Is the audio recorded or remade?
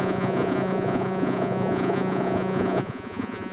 remade